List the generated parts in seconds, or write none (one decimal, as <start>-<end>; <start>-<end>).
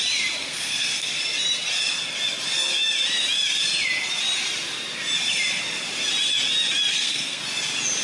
0.4-1.2; 6.9-7.4